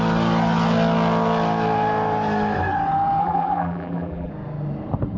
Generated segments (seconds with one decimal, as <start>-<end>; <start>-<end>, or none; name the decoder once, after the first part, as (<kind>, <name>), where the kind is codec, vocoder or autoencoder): 3.2-4.3 (vocoder, BigVGAN v2)